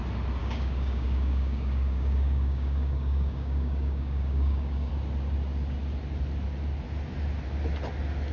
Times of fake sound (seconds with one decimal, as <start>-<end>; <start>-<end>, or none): 0.4-4.9